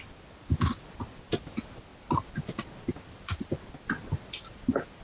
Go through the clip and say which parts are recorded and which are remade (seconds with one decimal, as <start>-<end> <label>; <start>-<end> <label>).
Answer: 0.0-5.0 recorded